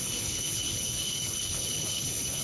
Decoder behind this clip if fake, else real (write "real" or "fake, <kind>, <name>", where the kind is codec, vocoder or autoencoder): fake, codec, HILCodec